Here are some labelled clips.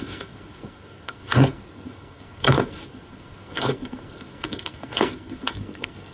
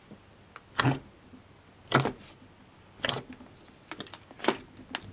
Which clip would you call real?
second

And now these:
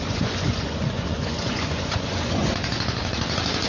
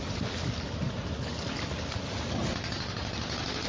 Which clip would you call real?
second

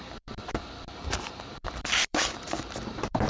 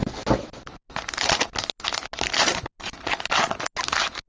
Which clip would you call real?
second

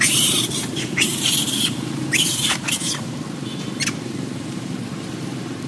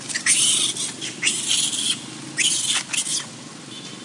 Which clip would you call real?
second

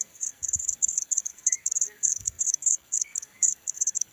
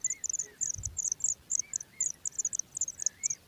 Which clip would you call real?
second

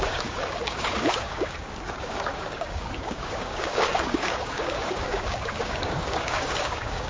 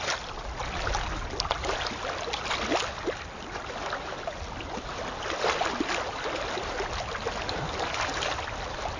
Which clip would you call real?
second